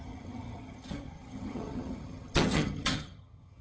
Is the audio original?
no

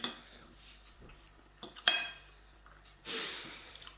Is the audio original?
no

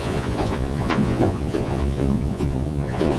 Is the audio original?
no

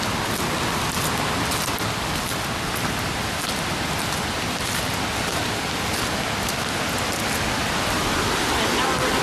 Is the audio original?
yes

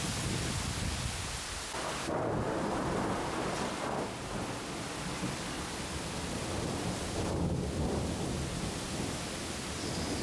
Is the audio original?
yes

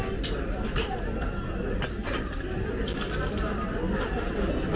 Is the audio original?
yes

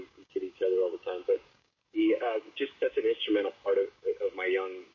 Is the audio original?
no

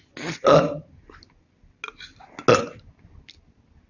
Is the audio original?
yes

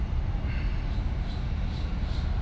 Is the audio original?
yes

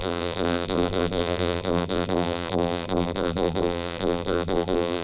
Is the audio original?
no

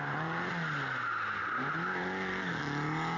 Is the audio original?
yes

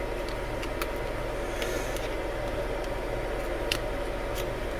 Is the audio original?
yes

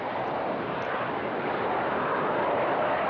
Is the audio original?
yes